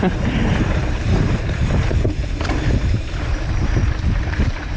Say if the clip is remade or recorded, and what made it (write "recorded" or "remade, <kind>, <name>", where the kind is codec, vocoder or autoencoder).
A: remade, vocoder, BigVGAN v2